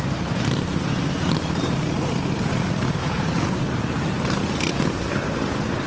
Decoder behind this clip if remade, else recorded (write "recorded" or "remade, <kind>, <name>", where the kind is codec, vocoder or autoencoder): remade, vocoder, BigVGAN v2